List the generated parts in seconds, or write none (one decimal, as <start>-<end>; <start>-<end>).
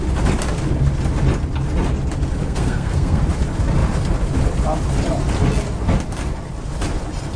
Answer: 2.4-3.2